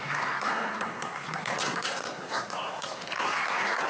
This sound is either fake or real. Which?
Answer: fake